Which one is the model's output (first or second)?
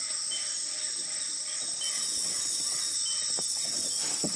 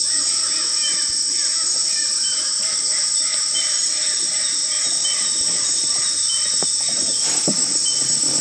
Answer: second